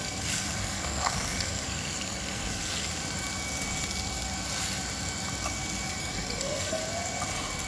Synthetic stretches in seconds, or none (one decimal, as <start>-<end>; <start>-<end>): 0.0-2.9; 6.0-6.8